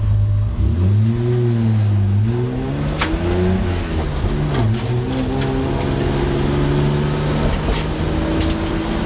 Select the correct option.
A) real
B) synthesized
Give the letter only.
A